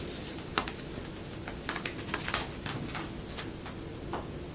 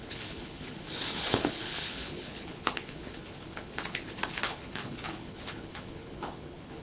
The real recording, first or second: first